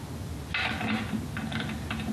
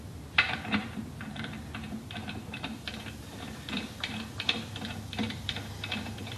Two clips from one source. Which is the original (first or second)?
first